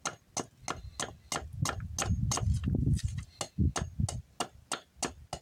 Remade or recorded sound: recorded